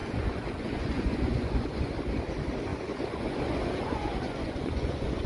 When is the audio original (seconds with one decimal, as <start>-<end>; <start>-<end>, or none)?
1.9-2.7